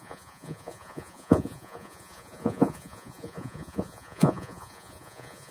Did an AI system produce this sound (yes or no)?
yes